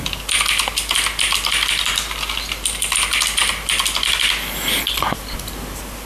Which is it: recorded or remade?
recorded